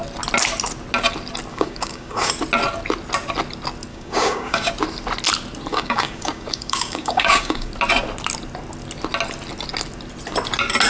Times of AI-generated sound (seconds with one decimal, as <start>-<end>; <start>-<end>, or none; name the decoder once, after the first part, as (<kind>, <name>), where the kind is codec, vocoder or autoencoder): 1.5-2.3 (codec, DAC); 3.9-4.7; 5.7-7.7